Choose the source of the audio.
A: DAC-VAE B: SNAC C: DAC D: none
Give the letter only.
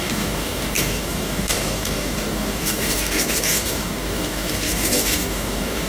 C